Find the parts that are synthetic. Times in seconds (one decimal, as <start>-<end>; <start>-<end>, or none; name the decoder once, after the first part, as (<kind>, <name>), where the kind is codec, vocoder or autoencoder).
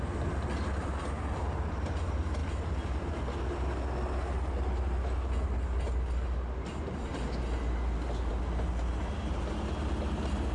none